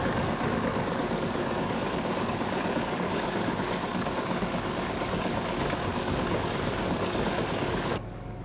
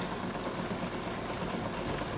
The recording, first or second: second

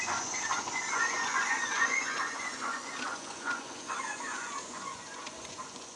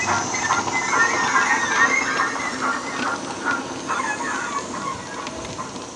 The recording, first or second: second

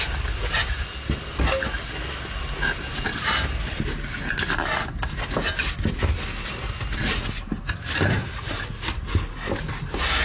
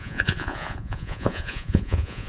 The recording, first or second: first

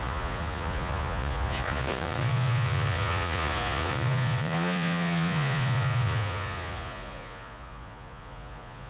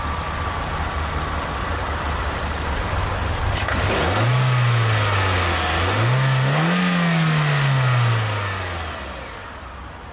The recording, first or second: second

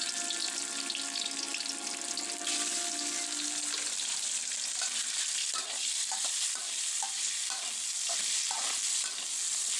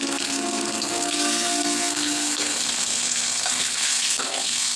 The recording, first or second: first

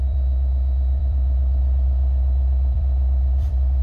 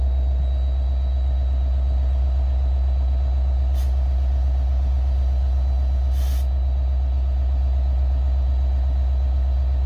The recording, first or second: second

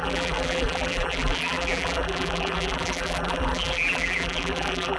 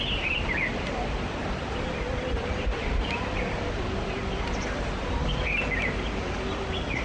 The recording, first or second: second